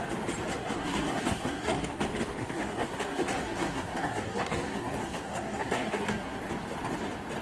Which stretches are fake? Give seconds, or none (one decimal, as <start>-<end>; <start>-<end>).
0.5-2.0; 2.4-6.4